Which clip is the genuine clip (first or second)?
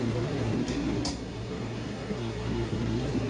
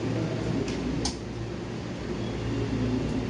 second